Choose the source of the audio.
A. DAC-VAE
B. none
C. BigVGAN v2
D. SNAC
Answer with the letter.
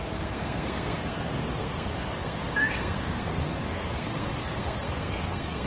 D